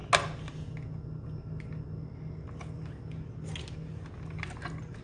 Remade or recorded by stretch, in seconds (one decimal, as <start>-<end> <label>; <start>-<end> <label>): 0.0-5.0 recorded